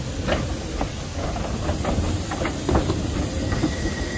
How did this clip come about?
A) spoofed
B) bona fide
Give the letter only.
B